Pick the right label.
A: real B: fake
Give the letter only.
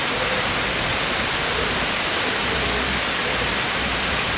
A